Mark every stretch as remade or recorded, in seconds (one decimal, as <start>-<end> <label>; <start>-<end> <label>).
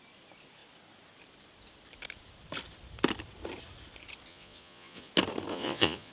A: 0.0-4.3 recorded; 4.3-5.1 remade; 5.1-5.5 recorded; 5.5-6.1 remade